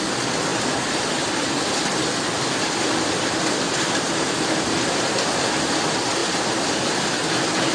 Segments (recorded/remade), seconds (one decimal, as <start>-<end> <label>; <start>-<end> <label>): 0.0-7.7 recorded